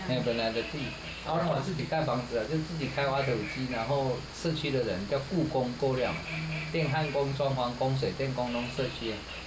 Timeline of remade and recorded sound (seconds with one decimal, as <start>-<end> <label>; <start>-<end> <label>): 0.0-1.1 recorded; 1.1-1.9 remade; 1.9-9.5 recorded